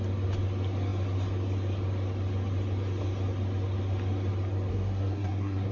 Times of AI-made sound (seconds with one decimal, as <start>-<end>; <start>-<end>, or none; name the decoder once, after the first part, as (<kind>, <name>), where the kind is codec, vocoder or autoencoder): 4.7-5.7 (codec, SNAC)